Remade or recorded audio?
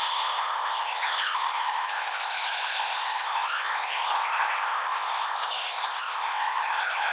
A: remade